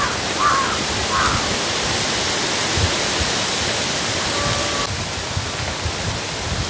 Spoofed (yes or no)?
no